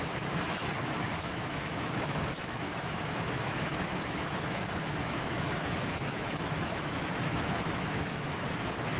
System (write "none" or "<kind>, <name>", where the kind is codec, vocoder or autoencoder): autoencoder, DAC-VAE